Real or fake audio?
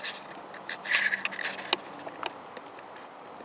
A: real